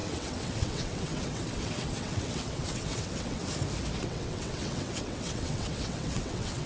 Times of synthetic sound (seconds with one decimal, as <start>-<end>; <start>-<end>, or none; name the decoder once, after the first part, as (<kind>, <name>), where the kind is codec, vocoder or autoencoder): 0.0-3.4 (vocoder, WaveNeXt); 4.0-6.7